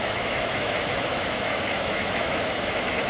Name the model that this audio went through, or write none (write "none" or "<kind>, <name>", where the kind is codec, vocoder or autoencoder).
autoencoder, DAC-VAE